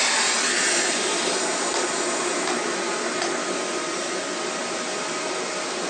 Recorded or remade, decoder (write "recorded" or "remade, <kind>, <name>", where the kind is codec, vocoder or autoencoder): recorded